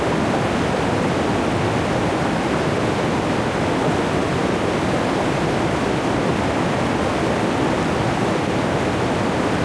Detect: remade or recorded recorded